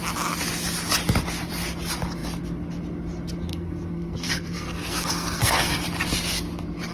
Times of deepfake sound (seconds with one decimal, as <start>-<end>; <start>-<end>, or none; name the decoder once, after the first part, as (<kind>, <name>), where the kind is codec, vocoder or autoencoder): 3.5-5.8 (codec, SNAC)